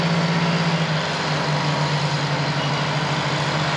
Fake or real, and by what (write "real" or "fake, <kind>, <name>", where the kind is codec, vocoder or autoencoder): real